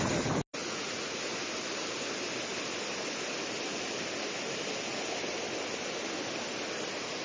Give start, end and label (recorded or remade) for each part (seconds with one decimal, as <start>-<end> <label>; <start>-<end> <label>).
0.0-0.6 recorded; 0.6-1.1 remade; 1.1-7.2 recorded